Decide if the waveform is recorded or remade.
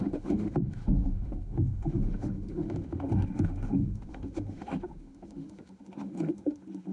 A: remade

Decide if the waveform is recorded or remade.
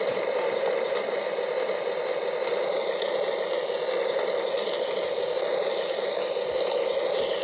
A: recorded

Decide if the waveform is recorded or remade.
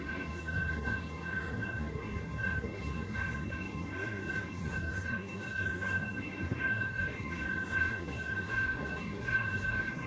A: remade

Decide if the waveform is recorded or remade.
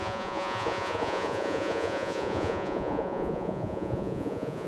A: remade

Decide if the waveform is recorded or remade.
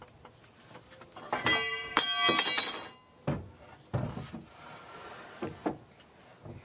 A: recorded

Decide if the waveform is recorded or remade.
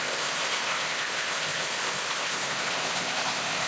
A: remade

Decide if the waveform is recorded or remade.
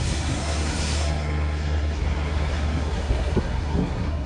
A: remade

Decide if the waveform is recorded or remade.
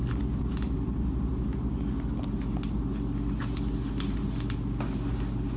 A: recorded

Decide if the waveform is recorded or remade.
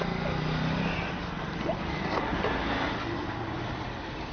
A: recorded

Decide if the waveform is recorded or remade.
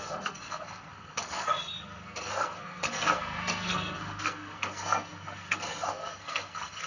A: remade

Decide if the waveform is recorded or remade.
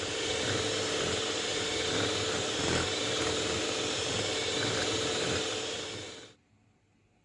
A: recorded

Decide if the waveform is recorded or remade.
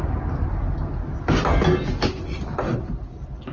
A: recorded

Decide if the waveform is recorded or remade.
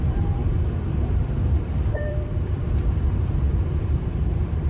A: remade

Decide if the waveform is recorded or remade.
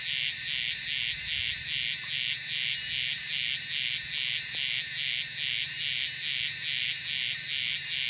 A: recorded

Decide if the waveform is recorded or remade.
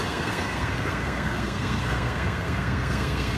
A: remade